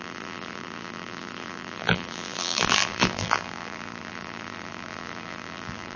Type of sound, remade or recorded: remade